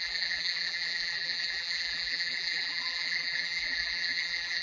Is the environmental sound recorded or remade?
remade